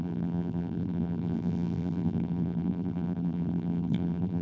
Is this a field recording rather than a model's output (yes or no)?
no